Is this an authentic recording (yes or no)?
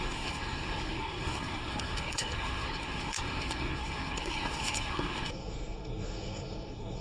no